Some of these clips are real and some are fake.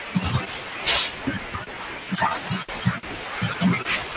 real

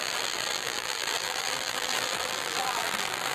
fake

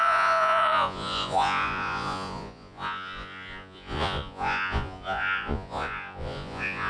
fake